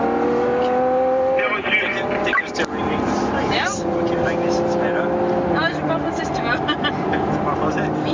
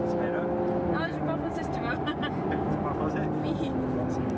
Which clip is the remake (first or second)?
first